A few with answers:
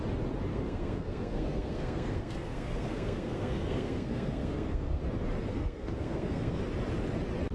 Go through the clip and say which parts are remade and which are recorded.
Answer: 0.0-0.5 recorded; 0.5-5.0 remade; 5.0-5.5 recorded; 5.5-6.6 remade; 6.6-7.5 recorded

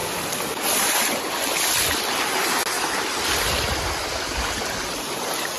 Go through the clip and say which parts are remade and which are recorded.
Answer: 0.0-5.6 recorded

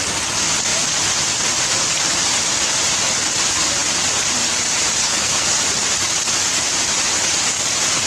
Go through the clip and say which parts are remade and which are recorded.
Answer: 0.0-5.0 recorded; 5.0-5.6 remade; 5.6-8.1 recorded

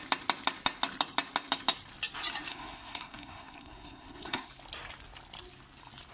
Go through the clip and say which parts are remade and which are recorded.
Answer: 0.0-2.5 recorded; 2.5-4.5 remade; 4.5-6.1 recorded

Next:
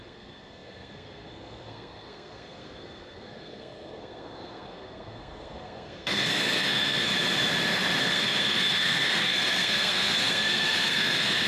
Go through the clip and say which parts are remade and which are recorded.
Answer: 0.0-7.1 remade; 7.1-8.0 recorded; 8.0-11.5 remade

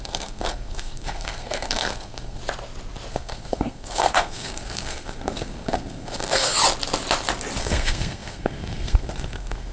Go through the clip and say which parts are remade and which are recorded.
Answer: 0.0-2.4 remade; 2.4-3.1 recorded; 3.1-6.6 remade; 6.6-7.6 recorded; 7.6-9.7 remade